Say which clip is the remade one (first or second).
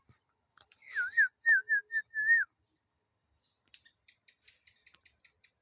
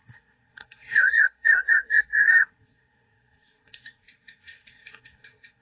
second